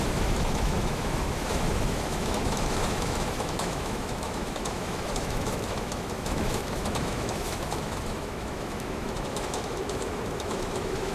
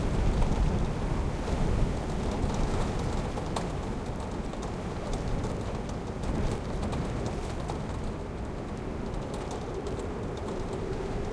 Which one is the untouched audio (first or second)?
second